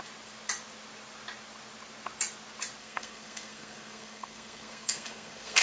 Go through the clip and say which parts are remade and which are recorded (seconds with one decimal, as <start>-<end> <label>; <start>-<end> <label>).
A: 0.0-2.8 recorded; 2.8-5.6 remade